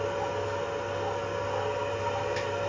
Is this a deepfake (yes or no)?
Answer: no